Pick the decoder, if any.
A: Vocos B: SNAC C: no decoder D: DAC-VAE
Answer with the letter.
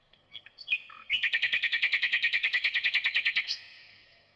B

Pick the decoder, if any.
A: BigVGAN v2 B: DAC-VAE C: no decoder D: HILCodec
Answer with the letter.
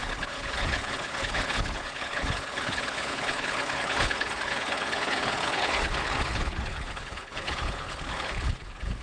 D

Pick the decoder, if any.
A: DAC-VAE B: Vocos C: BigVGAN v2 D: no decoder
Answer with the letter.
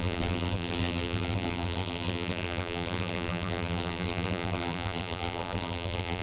C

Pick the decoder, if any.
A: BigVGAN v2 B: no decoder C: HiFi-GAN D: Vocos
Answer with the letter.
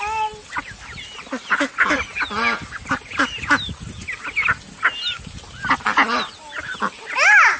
B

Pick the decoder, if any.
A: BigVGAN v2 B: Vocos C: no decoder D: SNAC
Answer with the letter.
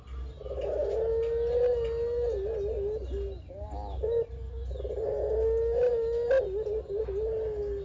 C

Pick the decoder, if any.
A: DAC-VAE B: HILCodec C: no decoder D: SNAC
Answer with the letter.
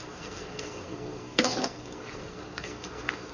D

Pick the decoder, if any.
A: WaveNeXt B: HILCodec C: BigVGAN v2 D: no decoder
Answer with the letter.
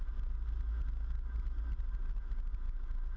D